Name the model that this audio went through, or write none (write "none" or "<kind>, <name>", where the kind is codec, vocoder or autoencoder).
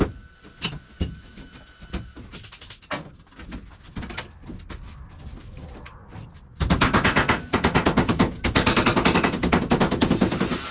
vocoder, BigVGAN v2